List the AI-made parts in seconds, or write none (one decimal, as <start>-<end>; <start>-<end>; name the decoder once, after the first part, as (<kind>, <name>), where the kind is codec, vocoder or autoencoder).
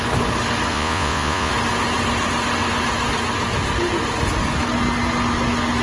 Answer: 0.7-1.5 (vocoder, Vocos)